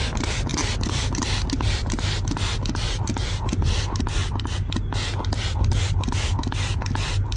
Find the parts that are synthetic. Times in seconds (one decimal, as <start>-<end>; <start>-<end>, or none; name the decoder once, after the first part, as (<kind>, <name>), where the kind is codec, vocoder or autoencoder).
none